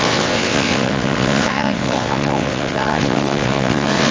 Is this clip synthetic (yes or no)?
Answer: yes